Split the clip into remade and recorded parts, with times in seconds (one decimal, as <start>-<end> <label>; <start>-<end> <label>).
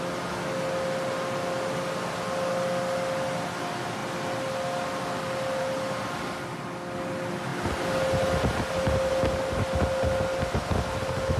0.0-11.4 recorded